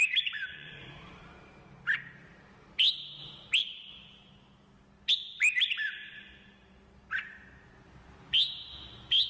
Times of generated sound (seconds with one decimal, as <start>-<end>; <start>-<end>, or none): 0.5-1.2